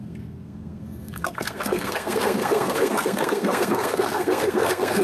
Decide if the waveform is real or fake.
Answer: fake